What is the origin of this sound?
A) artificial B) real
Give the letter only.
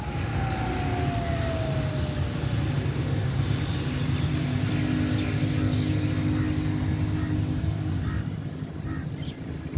B